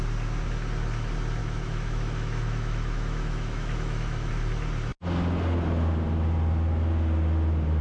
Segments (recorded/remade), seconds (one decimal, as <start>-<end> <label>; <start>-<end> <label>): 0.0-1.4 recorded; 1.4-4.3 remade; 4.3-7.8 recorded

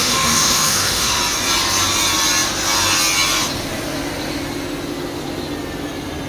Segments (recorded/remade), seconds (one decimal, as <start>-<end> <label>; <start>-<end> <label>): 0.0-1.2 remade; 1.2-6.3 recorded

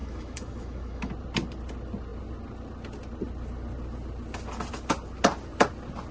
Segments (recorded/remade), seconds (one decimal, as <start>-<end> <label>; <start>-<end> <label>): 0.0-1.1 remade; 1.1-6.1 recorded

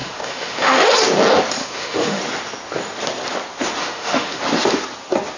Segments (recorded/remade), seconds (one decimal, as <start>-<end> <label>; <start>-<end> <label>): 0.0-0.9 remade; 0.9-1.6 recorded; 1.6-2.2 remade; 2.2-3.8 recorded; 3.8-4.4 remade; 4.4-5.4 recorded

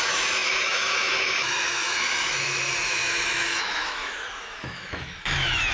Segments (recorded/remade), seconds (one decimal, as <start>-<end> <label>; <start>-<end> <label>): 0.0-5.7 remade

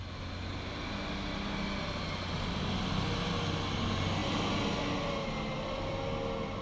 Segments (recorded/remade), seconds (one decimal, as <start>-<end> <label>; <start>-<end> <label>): 0.0-6.6 recorded

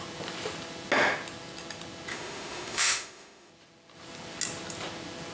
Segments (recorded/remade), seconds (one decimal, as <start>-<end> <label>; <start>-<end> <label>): 0.0-2.1 recorded; 2.1-3.5 remade; 3.5-5.3 recorded

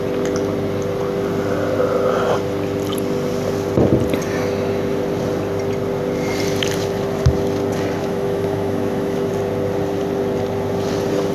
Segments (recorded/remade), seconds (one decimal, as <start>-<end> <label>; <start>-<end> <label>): 0.0-8.0 recorded; 8.0-9.3 remade; 9.3-11.3 recorded